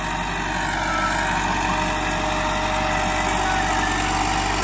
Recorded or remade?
recorded